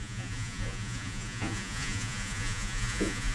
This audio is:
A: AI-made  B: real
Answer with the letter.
A